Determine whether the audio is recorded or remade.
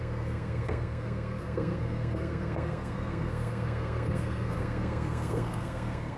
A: remade